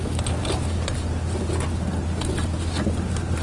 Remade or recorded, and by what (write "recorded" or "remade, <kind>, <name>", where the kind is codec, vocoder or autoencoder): recorded